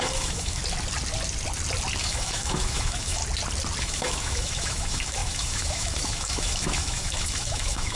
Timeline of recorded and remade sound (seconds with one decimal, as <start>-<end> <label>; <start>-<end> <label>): 0.0-0.6 remade; 0.6-2.0 recorded; 2.0-3.2 remade; 3.2-3.8 recorded; 3.8-8.0 remade